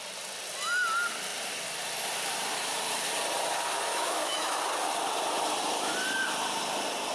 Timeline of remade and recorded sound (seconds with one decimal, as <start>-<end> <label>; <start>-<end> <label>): 0.0-3.9 recorded; 3.9-4.6 remade; 4.6-7.1 recorded